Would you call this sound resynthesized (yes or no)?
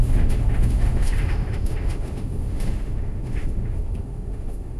yes